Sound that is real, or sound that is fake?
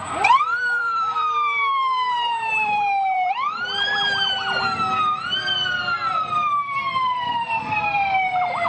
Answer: fake